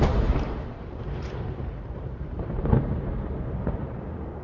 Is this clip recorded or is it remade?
remade